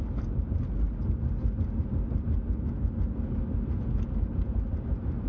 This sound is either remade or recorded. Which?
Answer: recorded